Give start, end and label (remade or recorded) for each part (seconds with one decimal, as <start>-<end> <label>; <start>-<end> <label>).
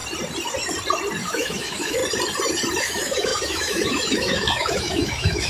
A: 0.0-1.2 recorded; 1.2-2.0 remade; 2.0-2.8 recorded; 2.8-5.5 remade